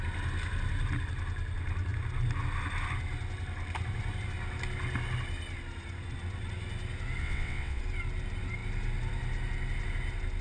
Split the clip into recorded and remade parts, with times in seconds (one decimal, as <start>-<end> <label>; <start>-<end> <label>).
0.0-7.2 recorded; 7.2-7.8 remade; 7.8-10.4 recorded

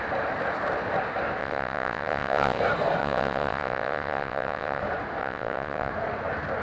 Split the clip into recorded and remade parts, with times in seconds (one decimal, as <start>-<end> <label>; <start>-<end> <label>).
0.0-1.4 recorded; 1.4-2.6 remade; 2.6-3.0 recorded; 3.0-4.8 remade; 4.8-5.2 recorded; 5.2-5.9 remade; 5.9-6.6 recorded

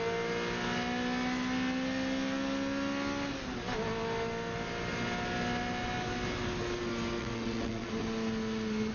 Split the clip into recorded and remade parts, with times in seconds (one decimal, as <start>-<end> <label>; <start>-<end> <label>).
0.0-7.2 recorded; 7.2-7.9 remade; 7.9-8.9 recorded